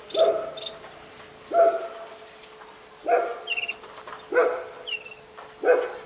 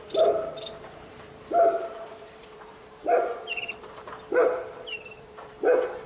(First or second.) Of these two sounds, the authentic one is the first